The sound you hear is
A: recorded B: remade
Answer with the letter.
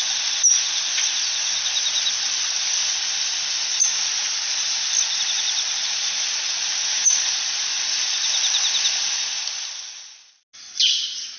A